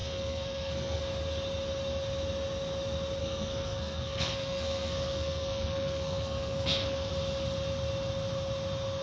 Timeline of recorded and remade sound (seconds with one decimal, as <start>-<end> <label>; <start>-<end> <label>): 0.0-1.0 remade; 1.0-3.2 recorded; 3.2-7.1 remade; 7.1-9.0 recorded